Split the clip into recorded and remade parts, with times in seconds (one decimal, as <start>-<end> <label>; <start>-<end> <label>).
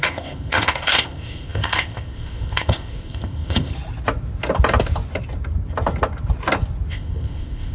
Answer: 0.0-3.7 remade; 3.7-6.9 recorded; 6.9-7.7 remade